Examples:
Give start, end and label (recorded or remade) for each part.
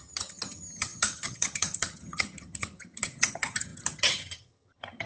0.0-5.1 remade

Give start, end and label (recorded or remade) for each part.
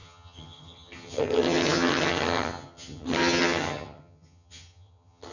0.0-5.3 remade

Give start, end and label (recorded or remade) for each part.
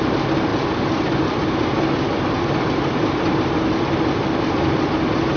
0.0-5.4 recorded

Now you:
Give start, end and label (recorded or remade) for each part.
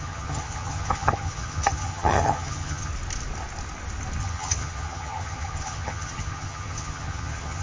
0.0-2.9 remade; 2.9-4.2 recorded; 4.2-7.6 remade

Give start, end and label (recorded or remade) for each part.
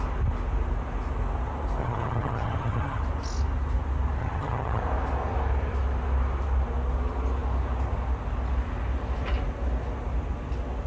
0.0-1.8 recorded; 1.8-3.0 remade; 3.0-4.2 recorded; 4.2-4.8 remade; 4.8-10.9 recorded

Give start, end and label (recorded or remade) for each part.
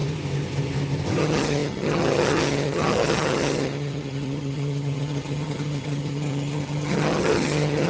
0.0-1.2 recorded; 1.2-7.9 remade